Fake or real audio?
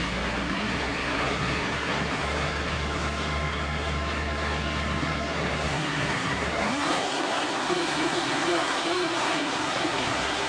fake